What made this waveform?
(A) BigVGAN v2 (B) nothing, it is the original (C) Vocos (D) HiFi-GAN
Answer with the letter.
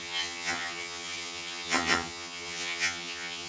D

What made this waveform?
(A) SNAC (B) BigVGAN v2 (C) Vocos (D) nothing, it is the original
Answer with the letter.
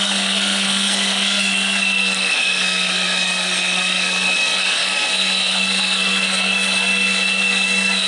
A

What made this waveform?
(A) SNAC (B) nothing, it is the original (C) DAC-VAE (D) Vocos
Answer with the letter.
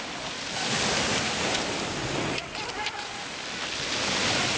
B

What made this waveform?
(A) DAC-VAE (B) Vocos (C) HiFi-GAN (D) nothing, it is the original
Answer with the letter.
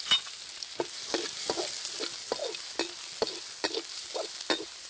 D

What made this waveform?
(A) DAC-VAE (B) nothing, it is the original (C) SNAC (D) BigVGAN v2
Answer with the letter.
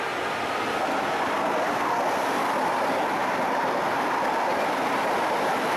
B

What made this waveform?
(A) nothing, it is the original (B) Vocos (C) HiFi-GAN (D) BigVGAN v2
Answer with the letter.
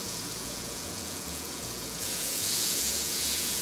B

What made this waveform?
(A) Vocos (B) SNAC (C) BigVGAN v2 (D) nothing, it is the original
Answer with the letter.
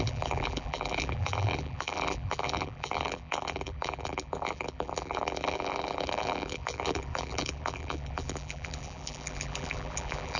C